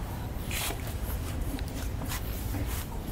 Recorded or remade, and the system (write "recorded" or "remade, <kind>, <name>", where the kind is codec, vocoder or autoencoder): remade, vocoder, BigVGAN v2